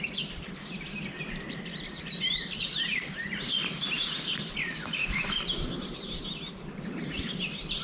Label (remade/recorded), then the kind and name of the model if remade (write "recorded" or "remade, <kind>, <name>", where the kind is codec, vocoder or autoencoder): remade, vocoder, BigVGAN v2